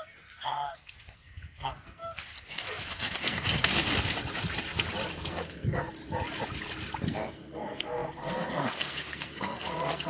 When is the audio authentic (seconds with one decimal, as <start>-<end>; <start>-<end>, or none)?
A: 3.7-5.1; 6.0-7.0

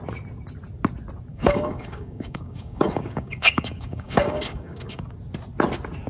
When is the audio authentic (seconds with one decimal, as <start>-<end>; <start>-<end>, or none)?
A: 0.0-1.3; 5.0-6.1

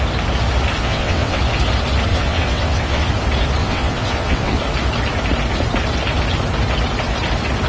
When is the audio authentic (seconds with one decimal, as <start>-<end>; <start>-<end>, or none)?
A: 0.0-0.8; 1.4-2.1; 3.1-3.6; 4.6-7.7

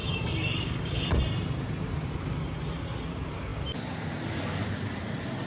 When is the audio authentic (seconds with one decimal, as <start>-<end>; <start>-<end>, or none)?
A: 1.2-5.5

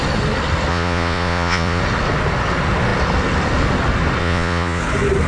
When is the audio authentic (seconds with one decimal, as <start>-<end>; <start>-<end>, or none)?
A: 0.0-0.7; 1.8-4.2; 4.8-5.3

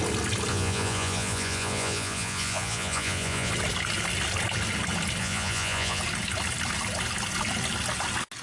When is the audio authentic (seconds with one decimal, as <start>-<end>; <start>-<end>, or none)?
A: 0.0-0.5; 3.5-5.2; 6.0-8.4

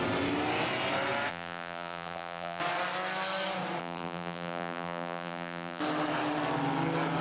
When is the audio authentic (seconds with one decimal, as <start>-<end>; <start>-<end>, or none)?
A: 0.0-1.3; 2.6-3.8; 5.8-7.2

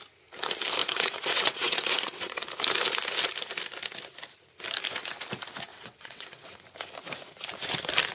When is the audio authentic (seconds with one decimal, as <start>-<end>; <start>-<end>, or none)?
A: 0.0-0.8; 2.4-5.7; 6.6-8.1